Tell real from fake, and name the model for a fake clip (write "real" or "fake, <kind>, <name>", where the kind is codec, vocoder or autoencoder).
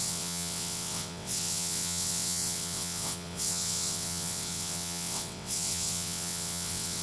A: fake, vocoder, WaveNeXt